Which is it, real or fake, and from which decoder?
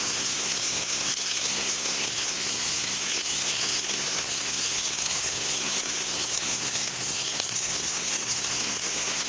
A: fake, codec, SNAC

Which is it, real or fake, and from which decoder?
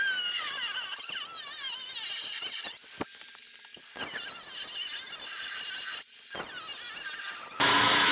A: real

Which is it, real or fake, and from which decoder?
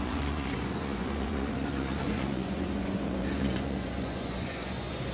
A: fake, vocoder, Vocos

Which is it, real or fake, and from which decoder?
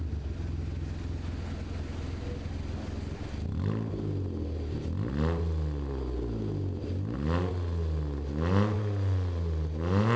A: real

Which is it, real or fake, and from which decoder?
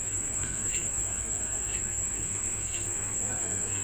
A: fake, codec, SNAC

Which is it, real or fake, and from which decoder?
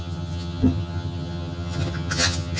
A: fake, vocoder, HiFi-GAN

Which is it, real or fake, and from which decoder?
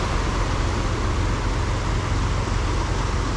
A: real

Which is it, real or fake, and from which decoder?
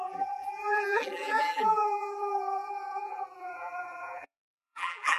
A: fake, vocoder, BigVGAN v2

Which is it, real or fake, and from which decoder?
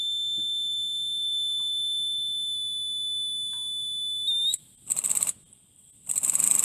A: real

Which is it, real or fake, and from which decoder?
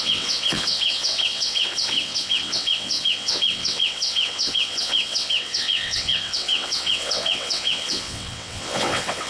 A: fake, vocoder, WaveNeXt